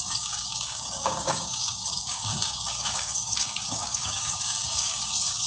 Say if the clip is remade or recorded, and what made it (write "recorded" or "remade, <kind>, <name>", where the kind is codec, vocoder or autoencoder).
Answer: remade, codec, DAC